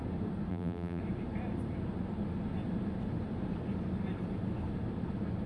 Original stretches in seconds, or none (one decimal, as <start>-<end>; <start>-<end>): 0.0-0.5; 1.0-5.5